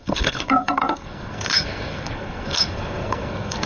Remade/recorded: remade